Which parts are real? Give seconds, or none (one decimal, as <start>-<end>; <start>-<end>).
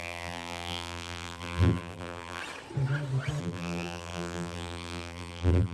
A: 2.4-3.4